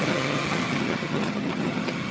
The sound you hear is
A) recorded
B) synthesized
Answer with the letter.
B